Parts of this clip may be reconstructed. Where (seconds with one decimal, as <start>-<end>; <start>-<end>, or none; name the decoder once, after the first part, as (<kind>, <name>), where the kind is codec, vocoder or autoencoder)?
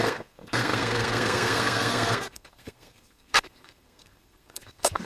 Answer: 0.0-5.1 (codec, SNAC)